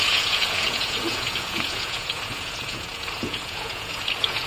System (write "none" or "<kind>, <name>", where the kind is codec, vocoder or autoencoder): vocoder, Vocos